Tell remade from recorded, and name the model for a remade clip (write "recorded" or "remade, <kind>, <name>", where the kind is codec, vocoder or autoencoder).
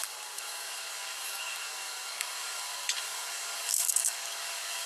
remade, codec, DAC